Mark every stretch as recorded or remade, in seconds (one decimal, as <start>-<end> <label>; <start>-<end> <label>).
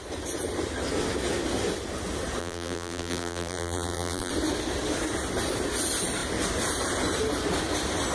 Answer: 0.0-2.4 recorded; 2.4-4.3 remade; 4.3-8.1 recorded